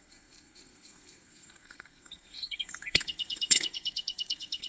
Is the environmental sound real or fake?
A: fake